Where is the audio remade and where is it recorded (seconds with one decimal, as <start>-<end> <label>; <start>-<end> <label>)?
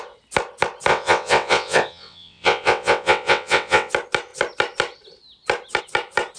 0.0-0.9 recorded; 0.9-3.9 remade; 3.9-6.4 recorded